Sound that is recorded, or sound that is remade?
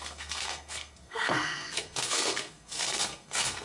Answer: remade